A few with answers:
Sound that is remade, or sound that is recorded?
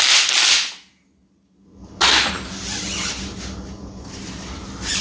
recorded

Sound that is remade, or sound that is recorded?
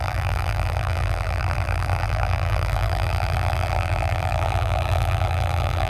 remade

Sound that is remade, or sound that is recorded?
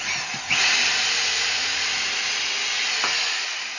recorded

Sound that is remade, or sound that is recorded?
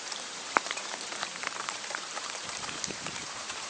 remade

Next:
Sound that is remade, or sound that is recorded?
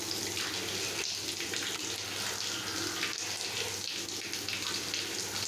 recorded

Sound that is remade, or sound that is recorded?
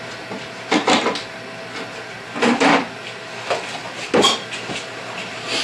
recorded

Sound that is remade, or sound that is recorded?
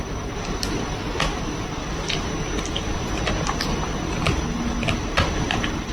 recorded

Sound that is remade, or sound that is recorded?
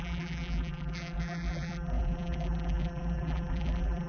remade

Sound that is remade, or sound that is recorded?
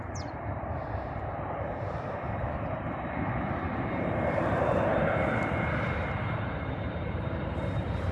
remade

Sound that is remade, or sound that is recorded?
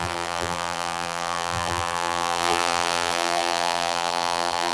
remade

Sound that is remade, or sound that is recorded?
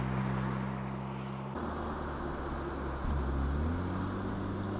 recorded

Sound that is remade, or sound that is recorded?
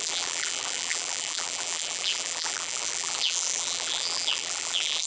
remade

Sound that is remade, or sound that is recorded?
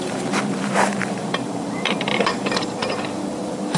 remade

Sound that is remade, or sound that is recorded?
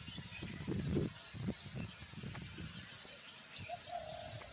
recorded